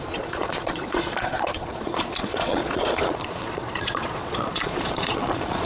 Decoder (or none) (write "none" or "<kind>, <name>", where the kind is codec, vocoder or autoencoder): vocoder, Vocos